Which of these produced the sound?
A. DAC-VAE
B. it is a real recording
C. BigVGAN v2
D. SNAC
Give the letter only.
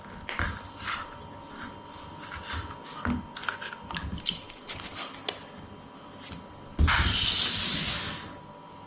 B